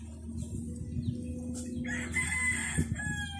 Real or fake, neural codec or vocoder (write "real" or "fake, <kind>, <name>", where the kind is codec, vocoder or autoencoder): real